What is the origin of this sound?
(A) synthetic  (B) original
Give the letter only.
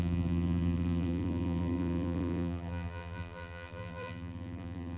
A